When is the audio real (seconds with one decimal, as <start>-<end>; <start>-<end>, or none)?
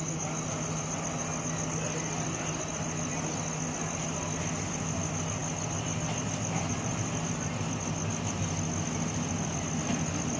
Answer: 0.0-10.4